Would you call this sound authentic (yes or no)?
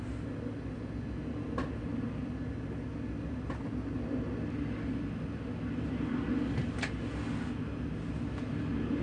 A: yes